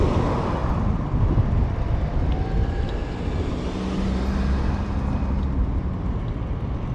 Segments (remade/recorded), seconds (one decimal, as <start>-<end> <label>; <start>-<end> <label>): 0.0-6.9 recorded